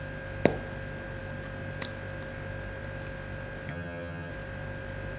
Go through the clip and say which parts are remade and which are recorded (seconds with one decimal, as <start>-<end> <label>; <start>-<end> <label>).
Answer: 0.0-3.7 recorded; 3.7-4.3 remade; 4.3-5.2 recorded